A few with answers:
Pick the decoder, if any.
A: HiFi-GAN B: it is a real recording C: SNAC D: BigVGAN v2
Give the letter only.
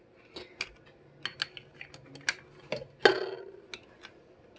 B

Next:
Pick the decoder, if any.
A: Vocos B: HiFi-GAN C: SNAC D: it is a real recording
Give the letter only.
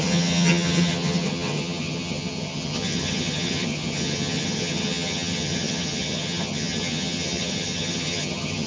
B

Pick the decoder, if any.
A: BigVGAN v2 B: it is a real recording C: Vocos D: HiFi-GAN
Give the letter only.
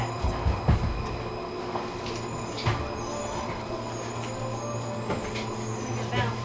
B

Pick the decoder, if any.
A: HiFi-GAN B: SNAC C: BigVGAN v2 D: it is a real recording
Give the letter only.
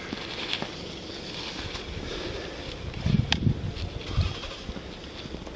D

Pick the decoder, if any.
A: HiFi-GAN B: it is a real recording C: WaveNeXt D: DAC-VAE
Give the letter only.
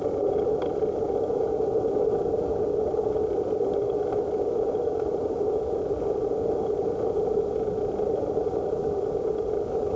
B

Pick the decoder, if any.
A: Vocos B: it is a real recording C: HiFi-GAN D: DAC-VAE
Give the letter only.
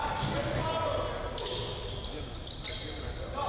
B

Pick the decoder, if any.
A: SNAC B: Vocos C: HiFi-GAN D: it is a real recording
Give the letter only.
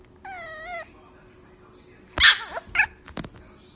D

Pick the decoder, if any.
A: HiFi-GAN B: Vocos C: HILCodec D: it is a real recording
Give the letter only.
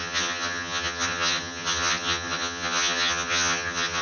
A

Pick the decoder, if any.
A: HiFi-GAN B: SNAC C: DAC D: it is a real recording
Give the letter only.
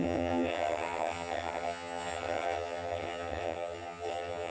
A